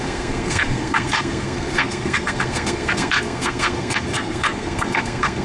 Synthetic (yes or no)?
yes